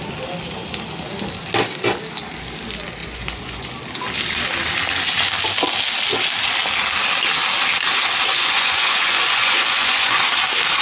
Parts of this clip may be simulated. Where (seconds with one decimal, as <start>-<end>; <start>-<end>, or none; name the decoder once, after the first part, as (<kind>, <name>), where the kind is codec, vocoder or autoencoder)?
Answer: 3.0-3.7 (vocoder, Vocos); 8.3-10.2